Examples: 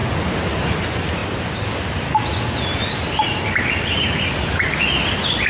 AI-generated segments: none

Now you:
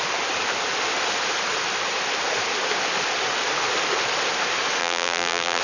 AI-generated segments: 4.8-5.6 (vocoder, BigVGAN v2)